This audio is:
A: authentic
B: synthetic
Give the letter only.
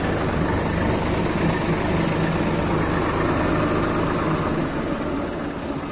A